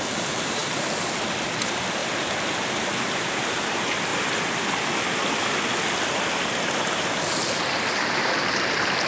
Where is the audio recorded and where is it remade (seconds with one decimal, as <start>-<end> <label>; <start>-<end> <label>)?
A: 0.0-0.6 remade; 0.6-1.6 recorded; 1.6-2.0 remade; 2.0-2.5 recorded; 2.5-4.1 remade; 4.1-8.0 recorded; 8.0-9.1 remade